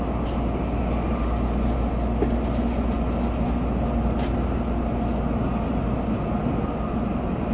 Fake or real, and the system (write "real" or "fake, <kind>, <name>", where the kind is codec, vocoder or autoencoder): real